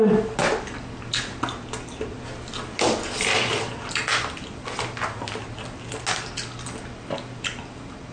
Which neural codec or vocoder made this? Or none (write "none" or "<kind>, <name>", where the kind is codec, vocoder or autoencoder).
none